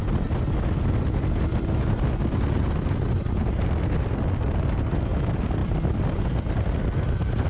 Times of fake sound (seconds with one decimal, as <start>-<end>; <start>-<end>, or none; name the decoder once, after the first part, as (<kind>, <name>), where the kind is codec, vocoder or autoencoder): none